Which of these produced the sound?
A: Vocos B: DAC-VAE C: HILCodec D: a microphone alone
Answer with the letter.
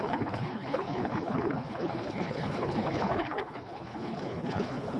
C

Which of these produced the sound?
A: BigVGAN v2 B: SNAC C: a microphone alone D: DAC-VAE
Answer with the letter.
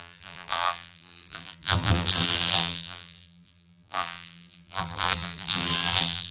A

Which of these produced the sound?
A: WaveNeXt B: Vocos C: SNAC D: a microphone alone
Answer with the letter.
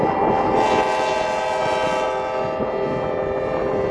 D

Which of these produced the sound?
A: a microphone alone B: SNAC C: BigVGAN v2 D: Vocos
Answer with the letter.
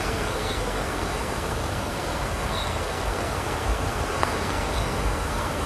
B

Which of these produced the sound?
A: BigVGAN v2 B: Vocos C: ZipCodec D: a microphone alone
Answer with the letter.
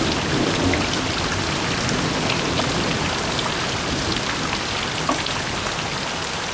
D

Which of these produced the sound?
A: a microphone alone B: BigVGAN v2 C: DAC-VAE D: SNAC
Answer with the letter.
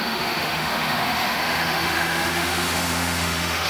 C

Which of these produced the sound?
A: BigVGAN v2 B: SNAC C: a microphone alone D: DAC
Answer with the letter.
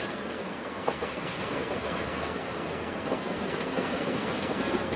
B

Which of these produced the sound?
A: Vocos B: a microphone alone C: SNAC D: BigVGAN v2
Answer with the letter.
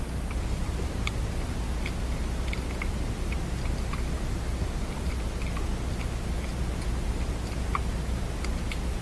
B